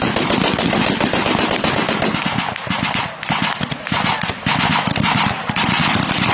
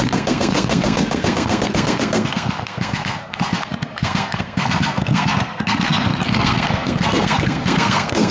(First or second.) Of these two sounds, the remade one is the second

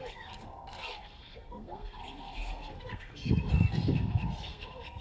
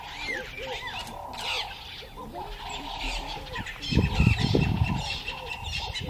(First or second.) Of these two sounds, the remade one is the first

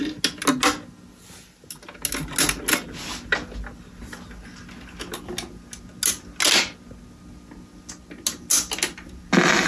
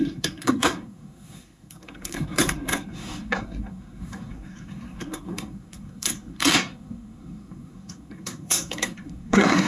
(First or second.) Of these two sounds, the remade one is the second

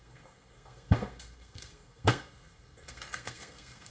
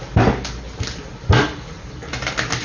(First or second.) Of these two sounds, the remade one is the first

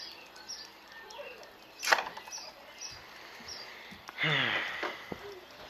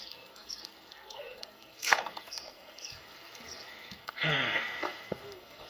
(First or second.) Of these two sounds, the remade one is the second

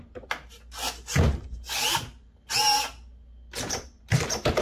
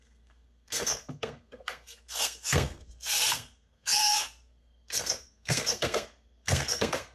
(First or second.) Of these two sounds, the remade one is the second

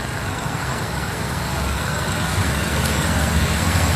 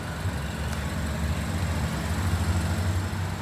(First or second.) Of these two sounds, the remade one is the first